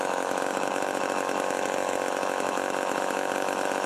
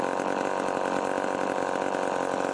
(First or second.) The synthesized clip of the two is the first